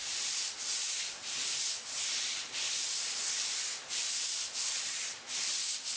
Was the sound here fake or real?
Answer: real